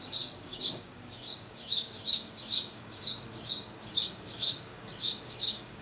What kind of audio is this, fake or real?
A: fake